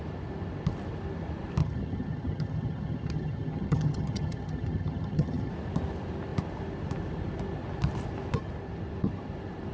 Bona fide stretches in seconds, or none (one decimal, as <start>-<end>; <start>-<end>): 0.0-1.6; 5.5-9.7